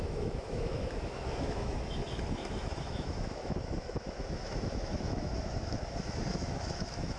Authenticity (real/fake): fake